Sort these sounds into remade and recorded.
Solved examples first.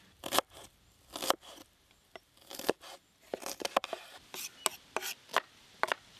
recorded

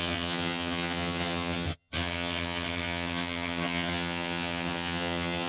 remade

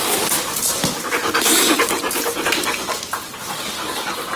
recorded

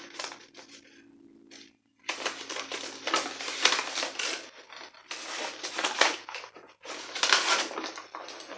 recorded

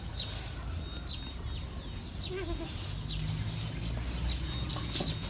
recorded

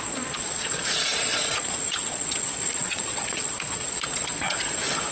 remade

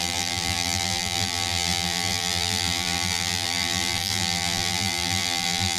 remade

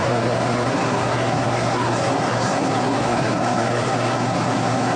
remade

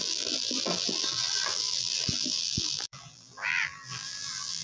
remade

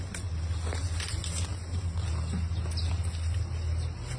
recorded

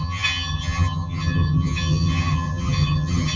remade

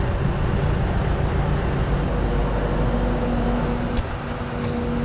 recorded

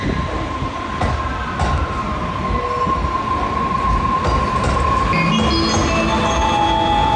recorded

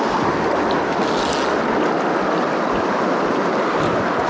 recorded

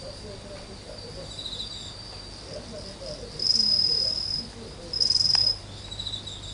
recorded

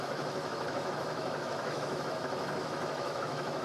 remade